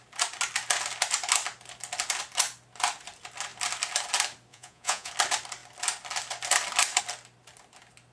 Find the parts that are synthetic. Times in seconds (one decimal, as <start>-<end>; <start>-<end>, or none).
4.5-5.1